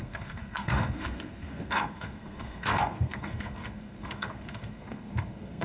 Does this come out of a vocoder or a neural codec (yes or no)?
yes